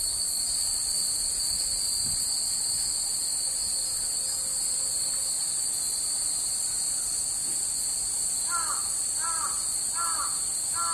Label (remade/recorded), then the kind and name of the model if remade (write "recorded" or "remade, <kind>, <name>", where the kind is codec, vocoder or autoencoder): recorded